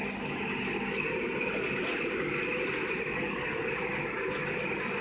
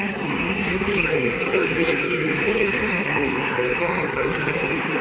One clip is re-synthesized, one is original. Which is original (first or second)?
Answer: first